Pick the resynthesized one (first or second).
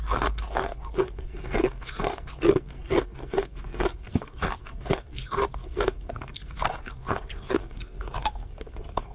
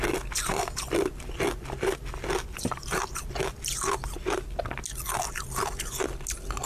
first